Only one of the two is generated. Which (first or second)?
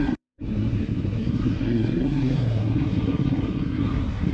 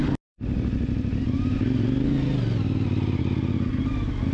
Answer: first